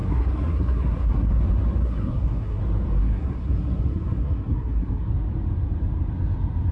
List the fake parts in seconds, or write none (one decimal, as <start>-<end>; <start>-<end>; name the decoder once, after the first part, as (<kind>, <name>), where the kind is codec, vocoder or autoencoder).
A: 0.0-1.3 (codec, SNAC); 1.8-2.6; 3.0-5.1